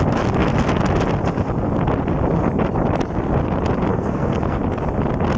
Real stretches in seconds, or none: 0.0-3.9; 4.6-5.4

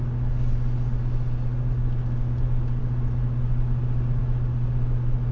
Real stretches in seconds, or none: 0.0-5.3

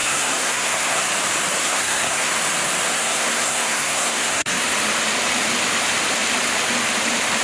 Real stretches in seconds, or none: 1.0-1.6; 2.3-2.9; 4.6-7.4

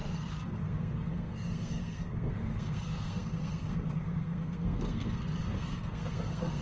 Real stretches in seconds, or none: none

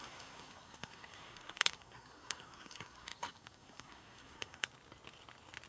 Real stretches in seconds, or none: 4.7-5.7

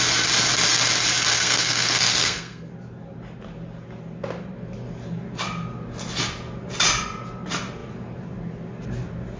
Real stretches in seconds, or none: 0.0-1.3; 2.7-9.4

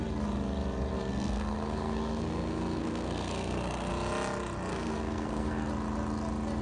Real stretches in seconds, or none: 0.0-0.9; 3.9-4.7; 5.7-6.6

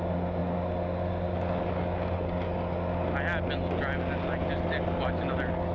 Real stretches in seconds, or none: 0.0-5.7